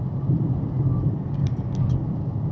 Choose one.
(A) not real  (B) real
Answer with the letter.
B